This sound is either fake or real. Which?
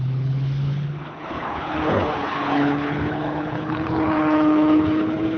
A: fake